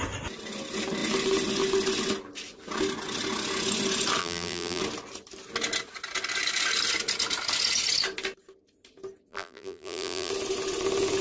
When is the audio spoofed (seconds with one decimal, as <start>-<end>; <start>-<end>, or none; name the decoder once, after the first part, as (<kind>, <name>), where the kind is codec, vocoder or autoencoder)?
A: 4.2-4.8 (vocoder, BigVGAN v2); 9.3-10.3